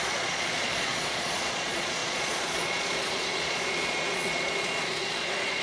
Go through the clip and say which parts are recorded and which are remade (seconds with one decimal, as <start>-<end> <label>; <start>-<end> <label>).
0.0-5.6 remade